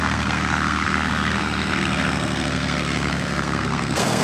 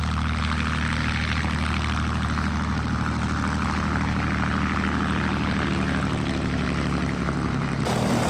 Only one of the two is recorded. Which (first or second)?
second